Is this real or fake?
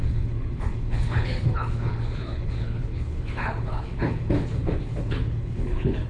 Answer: fake